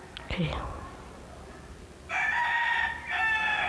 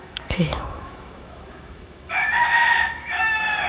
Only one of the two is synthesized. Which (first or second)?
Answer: second